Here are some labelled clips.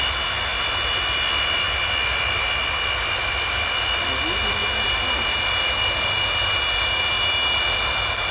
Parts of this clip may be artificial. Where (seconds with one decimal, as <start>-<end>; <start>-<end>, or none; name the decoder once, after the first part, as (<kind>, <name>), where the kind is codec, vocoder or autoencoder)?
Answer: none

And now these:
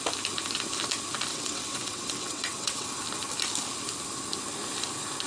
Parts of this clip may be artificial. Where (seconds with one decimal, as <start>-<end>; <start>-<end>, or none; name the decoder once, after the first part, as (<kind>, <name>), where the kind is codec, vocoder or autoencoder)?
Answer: 1.3-2.9 (vocoder, WaveNeXt)

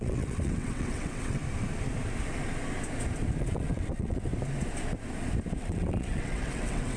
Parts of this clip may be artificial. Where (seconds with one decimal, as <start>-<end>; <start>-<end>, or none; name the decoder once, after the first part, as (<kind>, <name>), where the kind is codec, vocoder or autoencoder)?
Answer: 0.0-1.4 (vocoder, WaveNeXt); 3.4-4.3; 5.6-7.0